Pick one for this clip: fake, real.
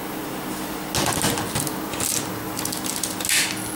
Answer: real